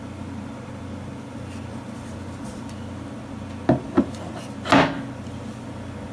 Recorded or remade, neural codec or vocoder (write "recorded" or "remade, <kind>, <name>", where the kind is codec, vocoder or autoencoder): recorded